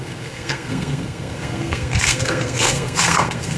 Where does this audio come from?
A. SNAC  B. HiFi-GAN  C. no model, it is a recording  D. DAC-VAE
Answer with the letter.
A